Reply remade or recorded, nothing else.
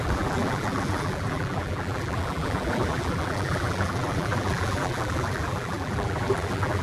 remade